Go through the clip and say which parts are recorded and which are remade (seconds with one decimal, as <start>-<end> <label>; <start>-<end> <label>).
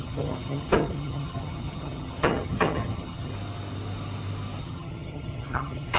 0.0-3.3 remade; 3.3-4.6 recorded; 4.6-6.0 remade